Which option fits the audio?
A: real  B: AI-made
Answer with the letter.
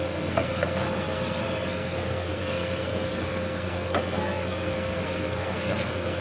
B